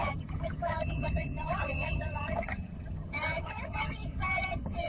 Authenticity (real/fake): fake